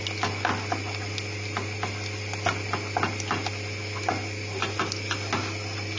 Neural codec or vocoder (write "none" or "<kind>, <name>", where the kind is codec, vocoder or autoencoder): none